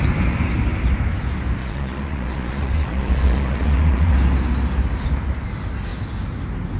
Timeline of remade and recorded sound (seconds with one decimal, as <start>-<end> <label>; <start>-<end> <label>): 0.0-1.6 recorded; 1.6-4.1 remade; 4.1-6.8 recorded